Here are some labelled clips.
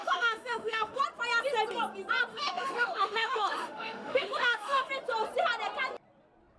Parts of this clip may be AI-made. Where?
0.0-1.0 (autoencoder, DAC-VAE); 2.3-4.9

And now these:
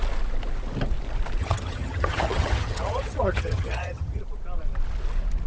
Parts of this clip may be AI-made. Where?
1.4-4.2 (vocoder, HiFi-GAN)

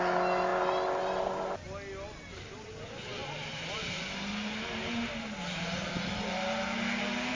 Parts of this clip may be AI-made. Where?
none

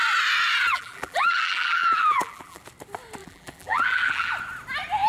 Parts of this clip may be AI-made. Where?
0.7-2.6 (vocoder, BigVGAN v2); 3.2-4.3

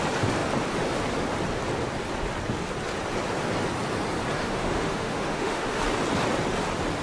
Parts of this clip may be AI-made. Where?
4.4-5.8 (autoencoder, DAC-VAE)

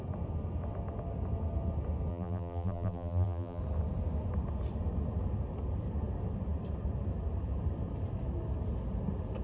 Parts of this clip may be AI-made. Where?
2.1-3.6 (vocoder, BigVGAN v2)

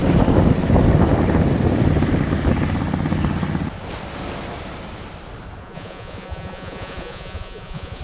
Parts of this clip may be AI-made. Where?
5.6-8.0 (vocoder, Vocos)

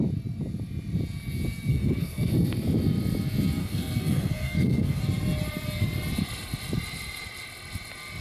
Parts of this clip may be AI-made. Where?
1.7-2.3 (codec, SNAC); 3.6-5.0